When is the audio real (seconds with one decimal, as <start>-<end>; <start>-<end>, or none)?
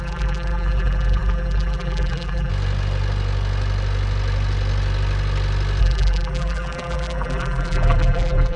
2.5-5.8